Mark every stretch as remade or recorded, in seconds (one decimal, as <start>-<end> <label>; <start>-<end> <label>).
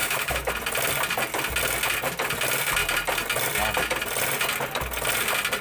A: 0.0-0.5 remade; 0.5-5.6 recorded